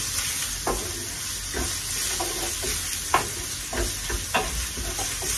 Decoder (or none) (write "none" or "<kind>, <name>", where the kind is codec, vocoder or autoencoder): none